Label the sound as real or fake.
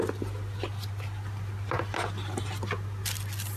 real